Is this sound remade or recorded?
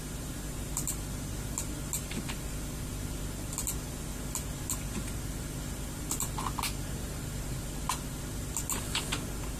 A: recorded